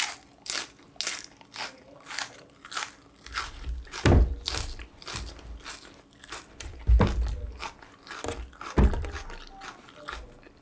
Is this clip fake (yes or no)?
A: no